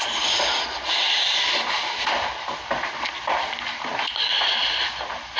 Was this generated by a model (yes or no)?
no